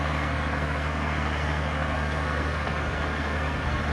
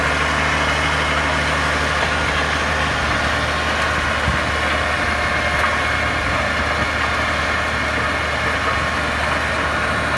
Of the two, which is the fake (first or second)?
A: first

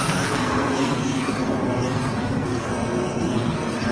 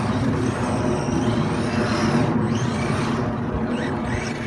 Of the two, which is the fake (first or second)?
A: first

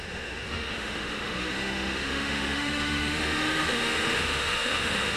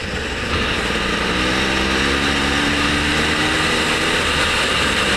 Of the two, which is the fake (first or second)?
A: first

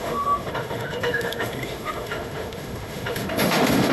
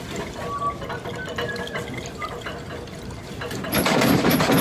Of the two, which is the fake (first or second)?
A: first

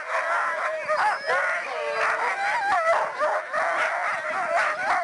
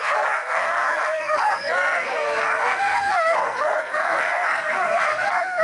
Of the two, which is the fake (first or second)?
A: second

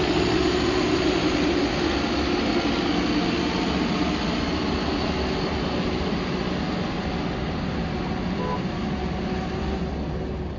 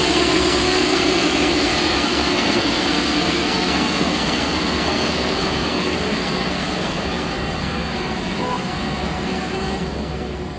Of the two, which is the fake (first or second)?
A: second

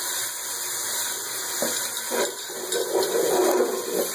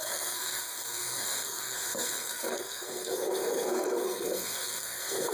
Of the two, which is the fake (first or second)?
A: second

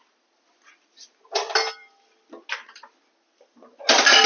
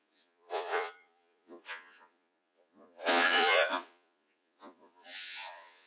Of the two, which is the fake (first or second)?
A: second